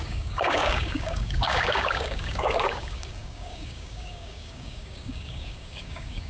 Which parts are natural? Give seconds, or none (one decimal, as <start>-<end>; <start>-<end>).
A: none